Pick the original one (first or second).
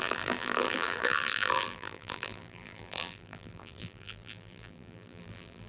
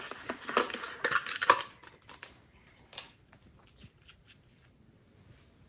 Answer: second